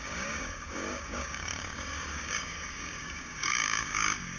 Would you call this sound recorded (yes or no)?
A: no